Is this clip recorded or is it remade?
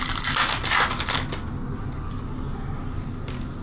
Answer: recorded